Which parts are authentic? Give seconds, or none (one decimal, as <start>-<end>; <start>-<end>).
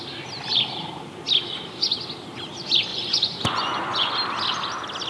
0.0-2.9; 4.1-5.1